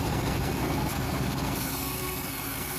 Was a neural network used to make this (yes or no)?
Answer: yes